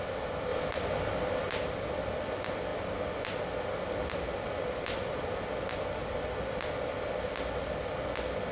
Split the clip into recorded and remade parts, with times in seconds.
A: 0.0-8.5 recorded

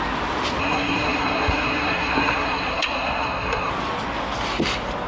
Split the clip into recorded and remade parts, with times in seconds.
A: 0.0-0.6 recorded; 0.6-3.7 remade; 3.7-5.1 recorded

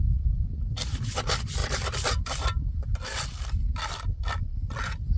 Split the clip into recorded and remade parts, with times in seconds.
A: 0.0-5.2 recorded

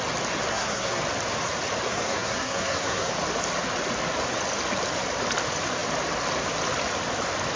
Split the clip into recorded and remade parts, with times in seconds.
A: 0.0-0.5 recorded; 0.5-1.0 remade; 1.0-1.9 recorded; 1.9-3.1 remade; 3.1-7.6 recorded